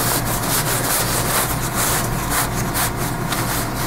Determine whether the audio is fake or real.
real